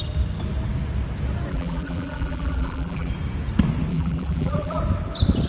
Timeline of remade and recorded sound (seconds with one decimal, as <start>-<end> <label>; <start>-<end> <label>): 0.0-1.5 recorded; 1.5-3.1 remade; 3.1-3.9 recorded; 3.9-4.8 remade; 4.8-5.5 recorded